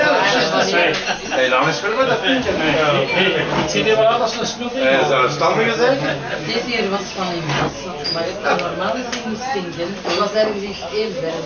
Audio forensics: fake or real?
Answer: real